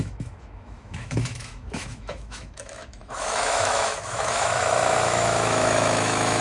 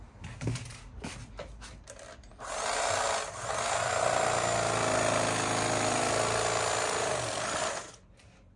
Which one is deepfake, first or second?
first